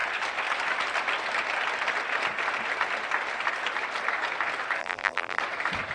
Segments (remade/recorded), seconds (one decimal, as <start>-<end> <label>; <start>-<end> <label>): 0.0-4.8 recorded; 4.8-5.4 remade; 5.4-5.9 recorded